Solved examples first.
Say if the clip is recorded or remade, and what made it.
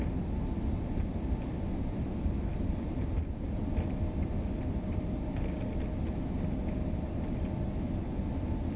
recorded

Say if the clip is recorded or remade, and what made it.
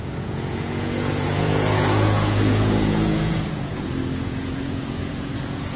remade, vocoder, Vocos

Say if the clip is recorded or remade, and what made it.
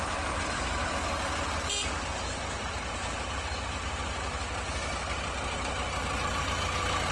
recorded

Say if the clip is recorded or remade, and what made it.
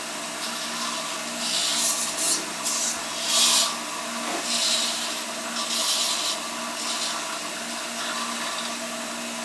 recorded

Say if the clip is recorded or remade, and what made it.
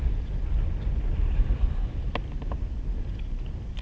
recorded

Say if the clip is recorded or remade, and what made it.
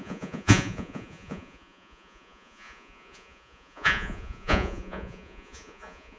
remade, vocoder, Vocos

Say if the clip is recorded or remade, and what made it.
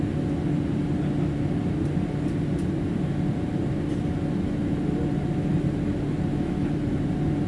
recorded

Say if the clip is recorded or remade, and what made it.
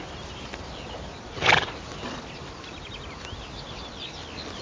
recorded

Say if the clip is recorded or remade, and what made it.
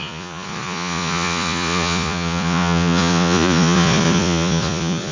remade, vocoder, Vocos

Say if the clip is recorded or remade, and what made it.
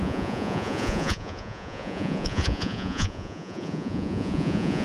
remade, vocoder, Vocos